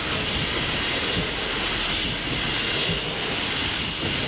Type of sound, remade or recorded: recorded